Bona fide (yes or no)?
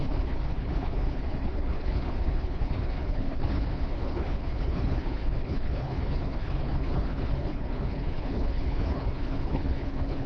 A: no